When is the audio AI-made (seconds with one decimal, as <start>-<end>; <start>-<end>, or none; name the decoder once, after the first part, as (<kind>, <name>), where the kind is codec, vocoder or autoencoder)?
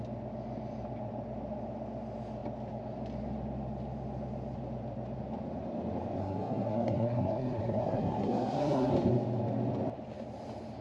6.2-8.9 (codec, SNAC)